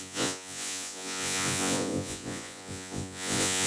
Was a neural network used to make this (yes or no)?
yes